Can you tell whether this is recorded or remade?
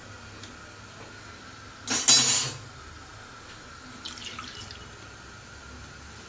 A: recorded